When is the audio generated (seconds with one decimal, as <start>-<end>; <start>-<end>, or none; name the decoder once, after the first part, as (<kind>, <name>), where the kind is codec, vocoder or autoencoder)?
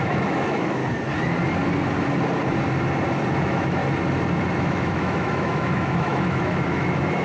0.0-0.8 (autoencoder, DAC-VAE); 3.4-3.8; 4.6-7.2